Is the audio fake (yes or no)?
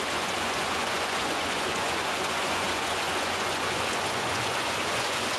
yes